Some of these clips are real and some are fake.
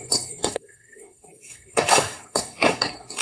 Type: fake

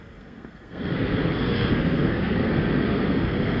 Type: fake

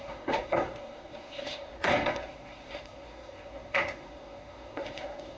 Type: fake